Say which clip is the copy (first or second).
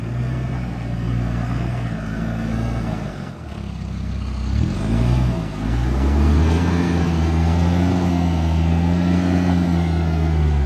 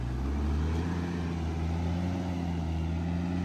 first